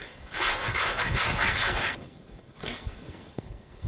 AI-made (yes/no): yes